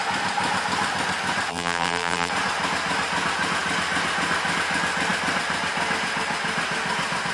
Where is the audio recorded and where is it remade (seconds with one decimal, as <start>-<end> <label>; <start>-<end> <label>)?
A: 0.0-1.5 recorded; 1.5-2.3 remade; 2.3-7.3 recorded